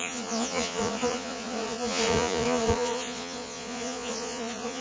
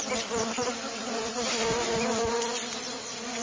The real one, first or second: second